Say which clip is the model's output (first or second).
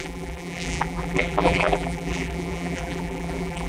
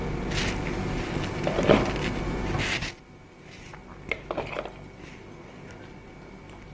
first